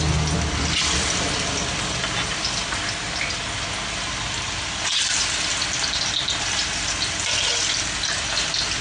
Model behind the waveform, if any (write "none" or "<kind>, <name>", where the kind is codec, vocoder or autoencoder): none